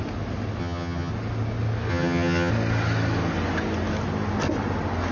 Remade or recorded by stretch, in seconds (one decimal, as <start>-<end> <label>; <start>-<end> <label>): 0.0-0.6 recorded; 0.6-1.1 remade; 1.1-1.9 recorded; 1.9-2.5 remade; 2.5-5.1 recorded